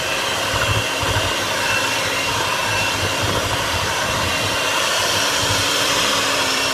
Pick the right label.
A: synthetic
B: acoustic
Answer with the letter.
A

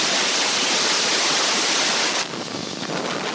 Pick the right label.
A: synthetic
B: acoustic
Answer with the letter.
B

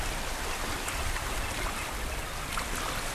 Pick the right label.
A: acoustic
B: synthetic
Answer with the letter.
A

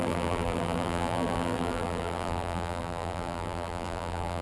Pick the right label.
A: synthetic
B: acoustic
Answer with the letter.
A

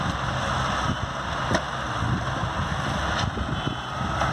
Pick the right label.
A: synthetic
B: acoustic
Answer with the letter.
B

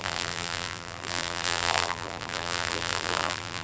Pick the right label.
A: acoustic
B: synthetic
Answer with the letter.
B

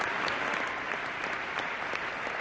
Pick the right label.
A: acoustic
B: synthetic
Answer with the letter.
B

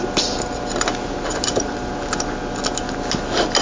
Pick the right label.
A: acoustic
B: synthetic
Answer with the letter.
A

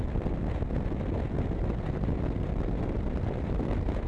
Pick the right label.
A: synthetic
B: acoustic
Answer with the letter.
B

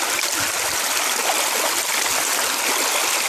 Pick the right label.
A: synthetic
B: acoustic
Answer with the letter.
B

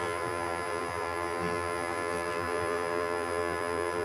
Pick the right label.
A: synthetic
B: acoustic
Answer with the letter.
A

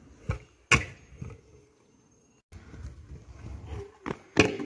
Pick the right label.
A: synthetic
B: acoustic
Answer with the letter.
B